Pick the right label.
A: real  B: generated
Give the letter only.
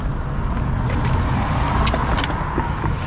A